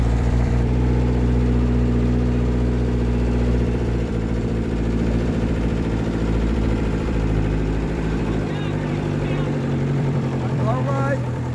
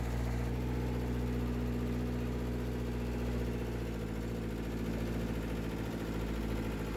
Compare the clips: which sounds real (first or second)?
second